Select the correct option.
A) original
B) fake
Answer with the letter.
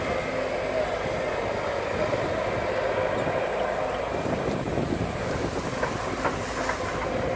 A